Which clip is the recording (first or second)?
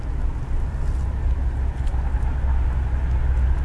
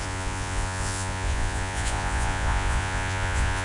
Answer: first